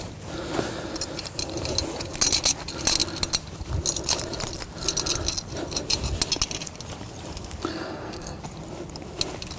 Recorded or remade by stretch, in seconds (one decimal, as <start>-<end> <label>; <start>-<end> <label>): 0.0-7.7 recorded; 7.7-8.4 remade; 8.4-9.6 recorded